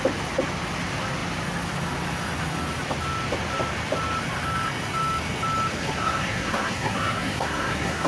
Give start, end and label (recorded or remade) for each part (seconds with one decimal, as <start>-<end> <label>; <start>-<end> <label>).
0.0-5.8 recorded; 5.8-8.1 remade